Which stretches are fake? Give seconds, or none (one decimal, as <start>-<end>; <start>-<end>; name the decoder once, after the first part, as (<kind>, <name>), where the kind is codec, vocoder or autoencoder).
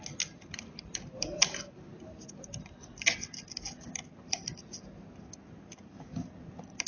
none